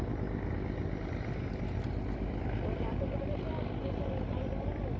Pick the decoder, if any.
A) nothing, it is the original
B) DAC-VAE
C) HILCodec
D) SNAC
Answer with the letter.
A